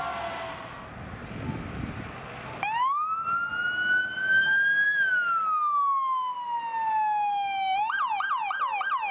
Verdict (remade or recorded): recorded